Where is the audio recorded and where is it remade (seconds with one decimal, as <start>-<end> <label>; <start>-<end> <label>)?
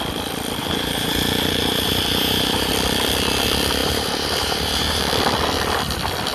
0.0-0.6 recorded; 0.6-2.7 remade; 2.7-3.8 recorded; 3.8-5.0 remade; 5.0-6.3 recorded